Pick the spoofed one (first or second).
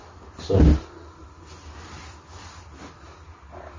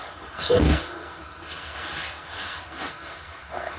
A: second